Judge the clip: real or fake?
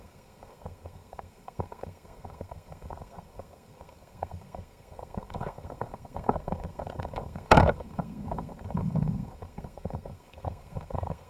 fake